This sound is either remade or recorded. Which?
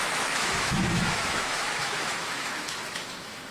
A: remade